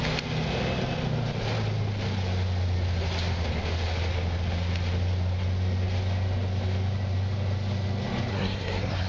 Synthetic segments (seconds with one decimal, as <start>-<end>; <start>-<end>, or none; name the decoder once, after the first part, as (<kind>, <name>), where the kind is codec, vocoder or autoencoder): 8.3-9.1 (codec, SNAC)